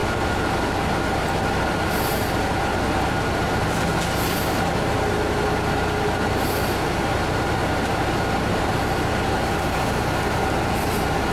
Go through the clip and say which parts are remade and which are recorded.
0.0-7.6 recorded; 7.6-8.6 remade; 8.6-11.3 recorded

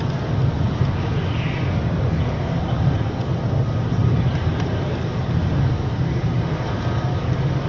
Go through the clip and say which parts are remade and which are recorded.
0.0-4.0 recorded; 4.0-5.2 remade; 5.2-7.7 recorded

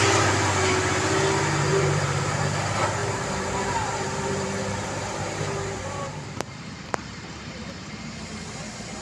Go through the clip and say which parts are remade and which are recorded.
0.0-1.7 recorded; 1.7-2.2 remade; 2.2-3.0 recorded; 3.0-8.0 remade; 8.0-9.0 recorded

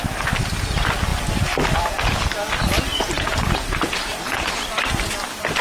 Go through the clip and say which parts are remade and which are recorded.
0.0-2.9 recorded; 2.9-4.6 remade; 4.6-5.6 recorded